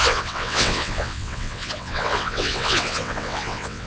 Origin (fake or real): fake